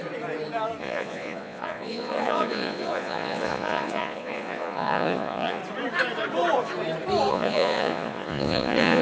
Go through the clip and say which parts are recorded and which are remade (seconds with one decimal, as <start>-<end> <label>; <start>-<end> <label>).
0.0-0.8 recorded; 0.8-5.6 remade; 5.6-7.3 recorded; 7.3-9.0 remade